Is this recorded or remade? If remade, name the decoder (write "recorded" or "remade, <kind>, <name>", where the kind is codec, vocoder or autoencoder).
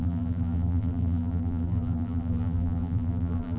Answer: remade, vocoder, BigVGAN v2